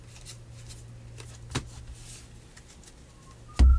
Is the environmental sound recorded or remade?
recorded